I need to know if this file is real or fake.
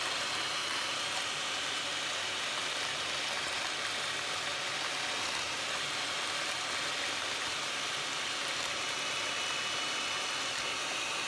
real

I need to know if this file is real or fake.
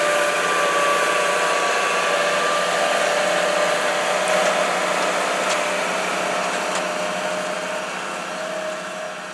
real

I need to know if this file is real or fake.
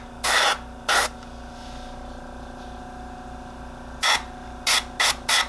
real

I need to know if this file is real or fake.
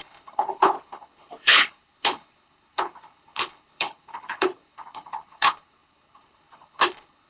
fake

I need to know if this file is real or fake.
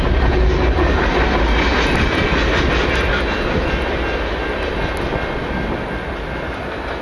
real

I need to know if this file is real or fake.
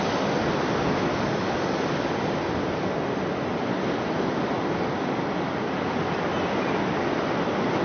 real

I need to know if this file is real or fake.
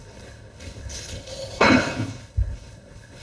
fake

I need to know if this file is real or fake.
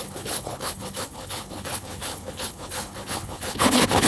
fake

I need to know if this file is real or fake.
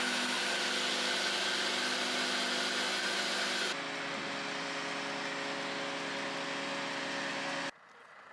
real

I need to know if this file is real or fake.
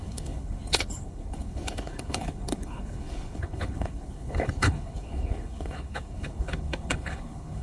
fake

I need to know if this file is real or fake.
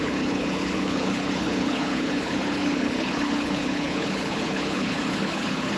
fake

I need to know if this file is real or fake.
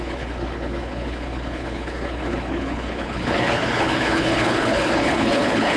fake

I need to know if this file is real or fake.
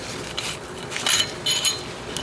real